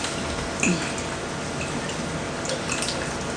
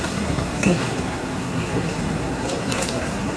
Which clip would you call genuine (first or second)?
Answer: first